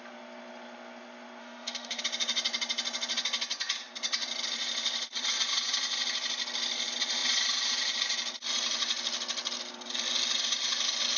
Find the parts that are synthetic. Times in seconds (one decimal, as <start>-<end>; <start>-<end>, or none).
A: 1.4-2.0